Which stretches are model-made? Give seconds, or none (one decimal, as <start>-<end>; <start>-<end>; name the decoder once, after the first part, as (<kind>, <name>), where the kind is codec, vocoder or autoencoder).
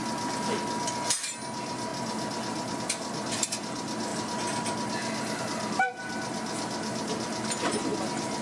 none